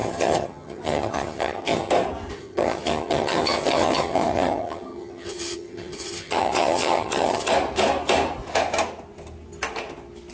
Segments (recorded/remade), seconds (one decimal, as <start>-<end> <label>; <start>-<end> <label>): 0.0-1.9 remade; 1.9-2.4 recorded; 2.4-7.5 remade; 7.5-10.3 recorded

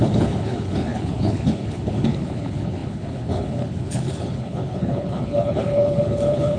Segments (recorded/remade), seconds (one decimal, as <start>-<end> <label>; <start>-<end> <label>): 0.0-6.6 remade